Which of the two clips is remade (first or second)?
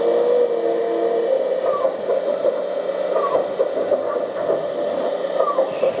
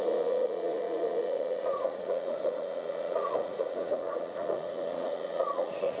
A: second